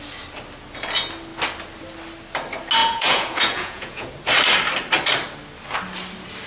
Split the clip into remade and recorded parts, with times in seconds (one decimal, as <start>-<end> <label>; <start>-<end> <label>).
0.0-2.8 recorded; 2.8-4.1 remade; 4.1-6.5 recorded